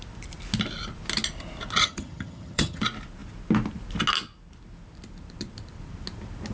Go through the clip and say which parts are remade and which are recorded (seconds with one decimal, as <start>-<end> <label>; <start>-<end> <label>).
0.0-1.8 recorded; 1.8-2.8 remade; 2.8-6.5 recorded